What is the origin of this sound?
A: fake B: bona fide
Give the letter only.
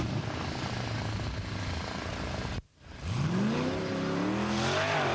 B